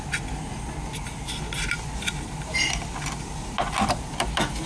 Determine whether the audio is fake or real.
real